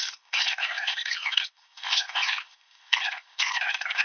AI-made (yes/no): yes